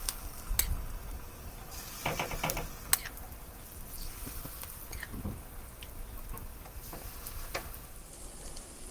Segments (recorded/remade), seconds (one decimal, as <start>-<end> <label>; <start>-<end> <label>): 0.0-6.5 recorded; 6.5-8.2 remade; 8.2-8.9 recorded